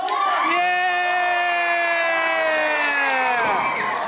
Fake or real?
real